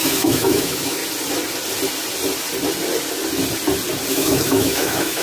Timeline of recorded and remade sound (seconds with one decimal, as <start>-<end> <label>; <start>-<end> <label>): 0.0-1.0 remade; 1.0-4.1 recorded; 4.1-5.2 remade